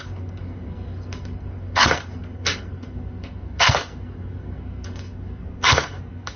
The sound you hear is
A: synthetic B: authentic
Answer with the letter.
A